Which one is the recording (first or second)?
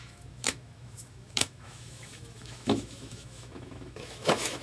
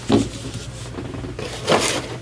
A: second